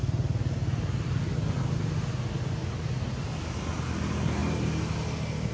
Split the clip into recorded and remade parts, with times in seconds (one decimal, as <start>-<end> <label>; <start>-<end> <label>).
0.0-4.4 recorded; 4.4-4.9 remade; 4.9-5.5 recorded